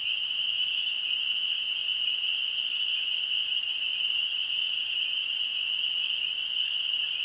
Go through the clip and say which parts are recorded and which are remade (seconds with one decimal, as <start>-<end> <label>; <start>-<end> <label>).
0.0-5.5 remade; 5.5-7.2 recorded